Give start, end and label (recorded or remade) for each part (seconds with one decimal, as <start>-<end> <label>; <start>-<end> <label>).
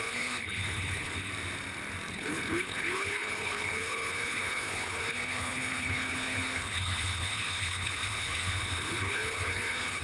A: 0.0-1.3 remade; 1.3-2.1 recorded; 2.1-10.0 remade